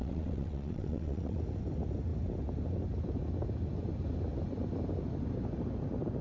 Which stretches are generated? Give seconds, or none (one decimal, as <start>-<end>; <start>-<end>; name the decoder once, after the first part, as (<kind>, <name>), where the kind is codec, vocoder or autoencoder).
0.0-1.4 (vocoder, WaveNeXt)